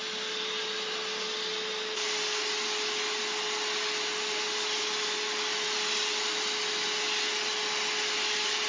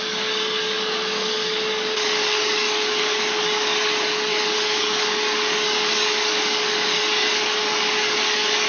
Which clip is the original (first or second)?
first